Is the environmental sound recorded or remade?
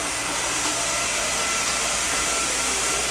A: remade